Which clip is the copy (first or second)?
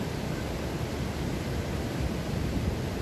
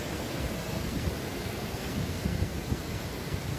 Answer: second